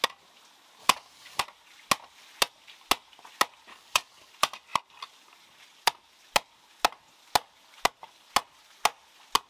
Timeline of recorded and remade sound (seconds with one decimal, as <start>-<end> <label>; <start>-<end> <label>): 0.0-0.8 recorded; 0.8-1.4 remade; 1.4-3.7 recorded; 3.7-4.3 remade; 4.3-9.5 recorded